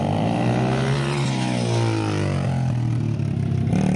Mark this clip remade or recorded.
recorded